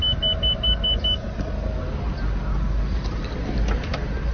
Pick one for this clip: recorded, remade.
recorded